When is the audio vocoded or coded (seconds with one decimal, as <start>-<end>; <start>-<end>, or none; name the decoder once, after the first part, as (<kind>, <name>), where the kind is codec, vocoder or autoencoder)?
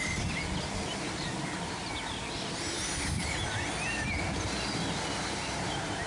none